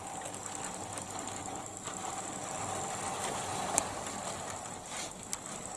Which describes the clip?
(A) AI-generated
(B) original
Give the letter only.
B